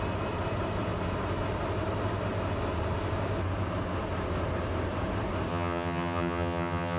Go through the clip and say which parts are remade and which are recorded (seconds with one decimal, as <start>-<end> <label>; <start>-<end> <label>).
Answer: 0.0-5.5 recorded; 5.5-7.0 remade